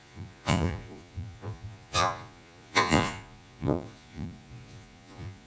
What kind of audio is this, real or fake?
fake